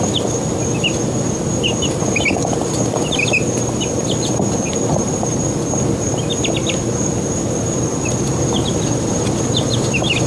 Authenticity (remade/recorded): recorded